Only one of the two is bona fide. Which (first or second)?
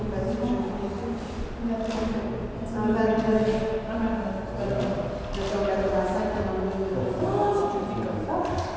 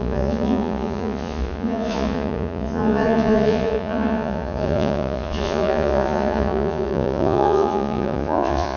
first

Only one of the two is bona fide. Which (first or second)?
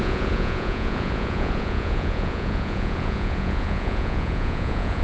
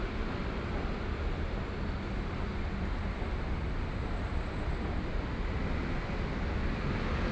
second